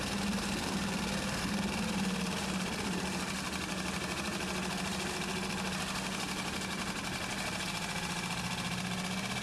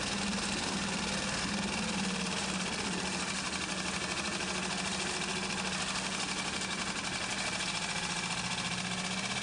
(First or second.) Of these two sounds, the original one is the second